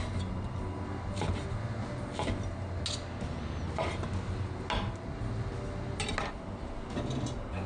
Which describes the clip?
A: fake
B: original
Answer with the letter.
B